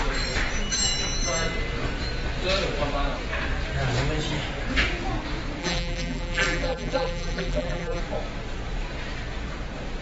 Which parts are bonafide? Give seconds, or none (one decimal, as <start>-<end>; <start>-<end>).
0.0-5.6; 8.0-10.0